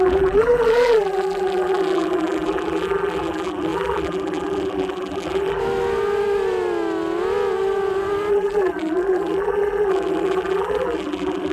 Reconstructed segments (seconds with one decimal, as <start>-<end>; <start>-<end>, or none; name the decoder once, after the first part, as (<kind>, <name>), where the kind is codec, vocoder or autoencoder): 0.0-5.6 (vocoder, BigVGAN v2); 8.3-11.5